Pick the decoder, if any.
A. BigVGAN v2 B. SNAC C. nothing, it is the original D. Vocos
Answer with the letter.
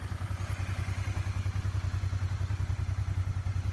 D